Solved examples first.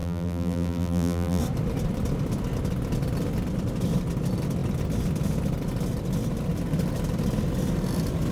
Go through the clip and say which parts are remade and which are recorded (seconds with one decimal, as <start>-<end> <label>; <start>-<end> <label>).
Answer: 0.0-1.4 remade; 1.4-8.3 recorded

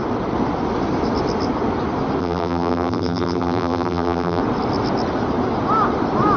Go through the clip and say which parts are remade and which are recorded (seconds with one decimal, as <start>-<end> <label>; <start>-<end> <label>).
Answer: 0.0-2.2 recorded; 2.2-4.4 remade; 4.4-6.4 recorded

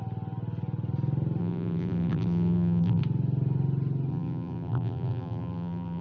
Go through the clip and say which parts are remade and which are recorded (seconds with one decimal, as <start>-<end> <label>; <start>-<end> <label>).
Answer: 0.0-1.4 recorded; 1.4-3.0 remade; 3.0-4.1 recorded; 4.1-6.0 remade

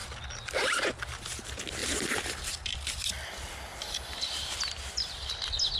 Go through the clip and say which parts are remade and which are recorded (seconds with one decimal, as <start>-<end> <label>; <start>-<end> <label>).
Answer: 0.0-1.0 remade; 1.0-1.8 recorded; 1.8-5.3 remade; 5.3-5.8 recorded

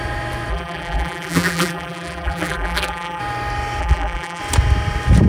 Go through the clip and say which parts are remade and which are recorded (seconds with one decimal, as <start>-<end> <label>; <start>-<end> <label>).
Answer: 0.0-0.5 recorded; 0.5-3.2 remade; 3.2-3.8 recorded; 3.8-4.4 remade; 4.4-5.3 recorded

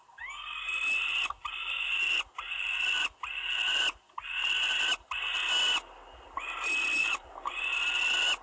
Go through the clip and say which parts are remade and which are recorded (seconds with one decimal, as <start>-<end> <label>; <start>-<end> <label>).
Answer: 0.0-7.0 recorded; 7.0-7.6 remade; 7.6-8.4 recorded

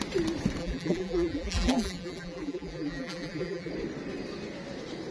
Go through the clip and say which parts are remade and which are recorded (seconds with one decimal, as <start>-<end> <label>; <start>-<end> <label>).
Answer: 0.0-0.6 recorded; 0.6-3.7 remade; 3.7-5.1 recorded